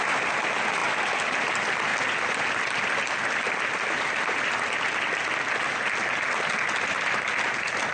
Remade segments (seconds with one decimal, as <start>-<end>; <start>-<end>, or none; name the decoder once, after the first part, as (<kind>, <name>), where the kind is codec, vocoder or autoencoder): none